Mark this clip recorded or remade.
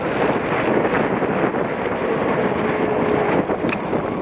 recorded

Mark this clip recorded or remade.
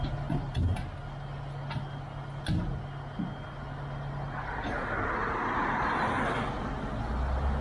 recorded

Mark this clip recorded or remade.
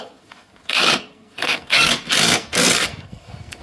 remade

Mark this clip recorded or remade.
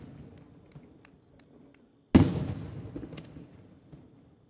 recorded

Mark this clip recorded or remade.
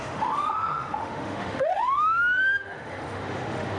remade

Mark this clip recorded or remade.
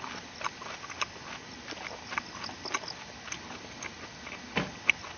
recorded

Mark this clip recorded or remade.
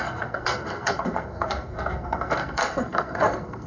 remade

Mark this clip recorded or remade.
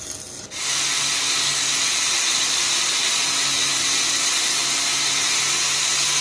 recorded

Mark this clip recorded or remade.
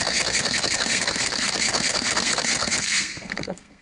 remade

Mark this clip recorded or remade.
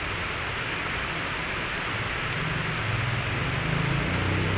recorded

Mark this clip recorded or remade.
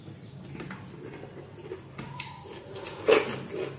recorded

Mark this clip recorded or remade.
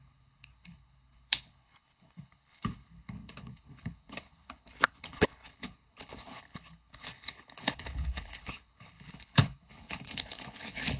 remade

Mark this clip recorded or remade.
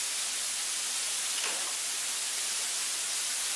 recorded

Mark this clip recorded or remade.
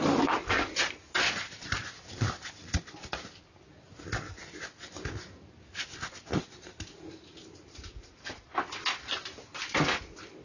recorded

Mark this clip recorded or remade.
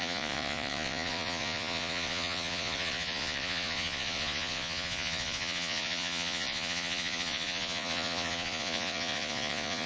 remade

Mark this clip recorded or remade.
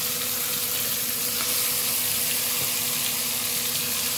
recorded